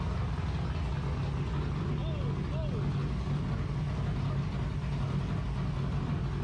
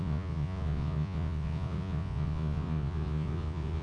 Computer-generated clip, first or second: second